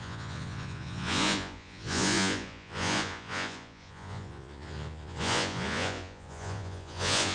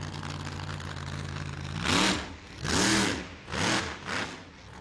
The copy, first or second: first